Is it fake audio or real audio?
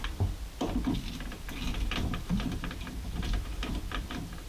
fake